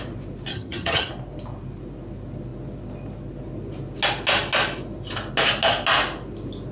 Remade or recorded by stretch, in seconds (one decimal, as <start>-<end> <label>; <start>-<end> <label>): 0.0-0.5 recorded; 0.5-1.1 remade; 1.1-6.7 recorded